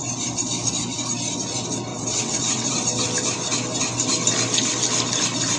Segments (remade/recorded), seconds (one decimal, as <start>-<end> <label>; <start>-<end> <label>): 0.0-1.9 recorded; 1.9-2.7 remade; 2.7-5.6 recorded